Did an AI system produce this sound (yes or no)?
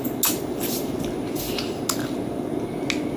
no